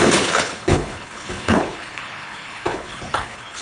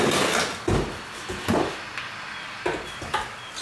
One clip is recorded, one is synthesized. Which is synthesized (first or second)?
first